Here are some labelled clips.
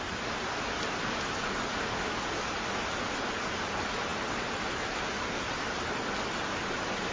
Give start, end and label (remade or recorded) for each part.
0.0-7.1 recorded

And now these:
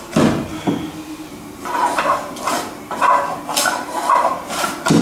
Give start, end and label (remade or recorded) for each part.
0.0-0.5 remade; 0.5-1.1 recorded; 1.1-5.0 remade